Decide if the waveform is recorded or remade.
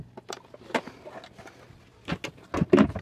recorded